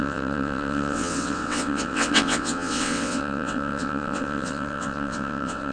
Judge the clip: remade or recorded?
remade